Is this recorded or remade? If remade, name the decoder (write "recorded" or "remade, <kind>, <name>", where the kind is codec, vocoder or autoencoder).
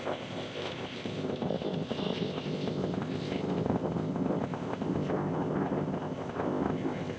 remade, codec, ZipCodec